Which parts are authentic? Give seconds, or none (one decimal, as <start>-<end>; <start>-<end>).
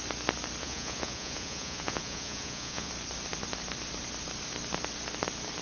0.0-0.6; 2.9-5.6